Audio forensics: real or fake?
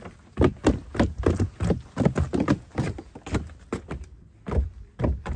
real